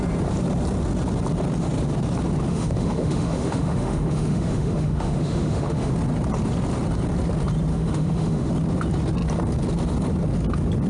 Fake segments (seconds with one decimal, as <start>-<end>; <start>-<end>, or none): 2.5-5.9; 7.7-8.5